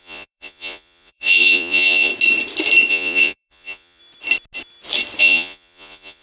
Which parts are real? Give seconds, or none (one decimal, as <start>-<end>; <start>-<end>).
2.1-2.9; 4.0-5.2